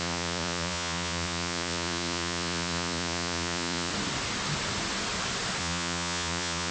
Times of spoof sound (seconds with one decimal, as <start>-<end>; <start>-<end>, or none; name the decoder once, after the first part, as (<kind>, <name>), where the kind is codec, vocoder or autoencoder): 0.0-3.9 (vocoder, Vocos); 5.6-6.7